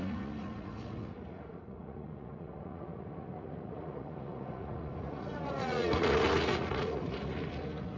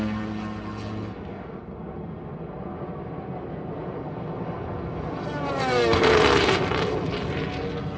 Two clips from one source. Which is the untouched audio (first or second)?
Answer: second